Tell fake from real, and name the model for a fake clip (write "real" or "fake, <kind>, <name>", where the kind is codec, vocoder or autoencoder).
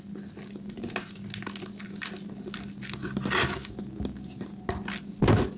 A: real